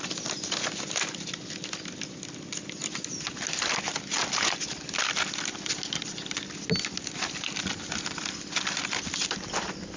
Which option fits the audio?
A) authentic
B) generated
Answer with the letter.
A